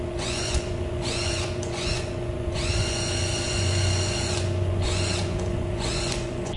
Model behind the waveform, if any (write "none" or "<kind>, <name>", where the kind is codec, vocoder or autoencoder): vocoder, Vocos